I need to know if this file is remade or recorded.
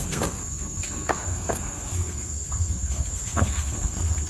remade